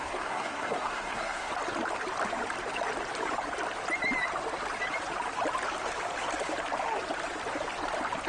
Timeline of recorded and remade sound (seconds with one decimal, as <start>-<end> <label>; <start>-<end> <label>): 0.0-1.5 remade; 1.5-8.3 recorded